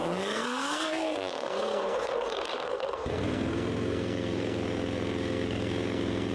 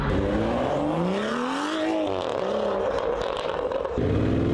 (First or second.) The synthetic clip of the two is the first